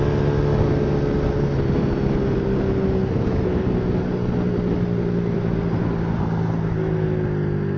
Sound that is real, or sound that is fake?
real